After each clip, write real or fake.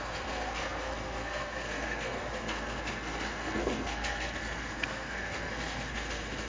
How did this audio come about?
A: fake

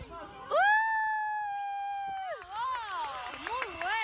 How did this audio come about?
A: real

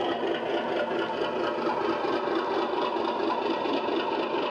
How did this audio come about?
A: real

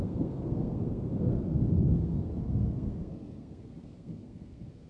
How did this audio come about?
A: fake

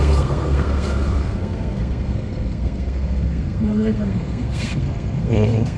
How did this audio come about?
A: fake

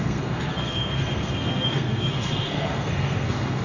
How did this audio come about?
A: fake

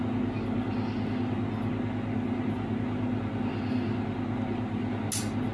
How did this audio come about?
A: real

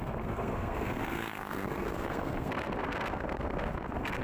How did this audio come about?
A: fake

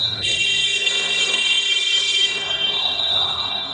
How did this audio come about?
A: fake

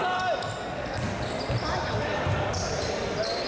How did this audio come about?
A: real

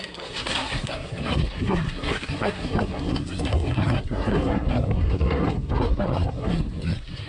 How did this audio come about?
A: fake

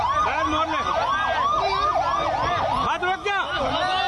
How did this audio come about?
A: real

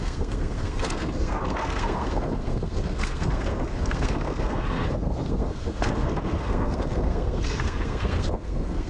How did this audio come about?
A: fake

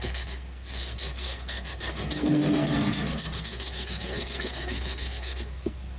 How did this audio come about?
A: fake